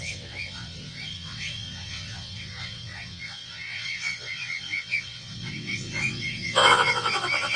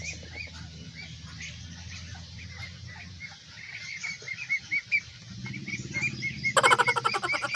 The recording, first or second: second